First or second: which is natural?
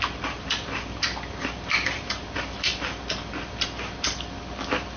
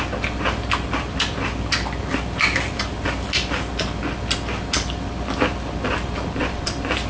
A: second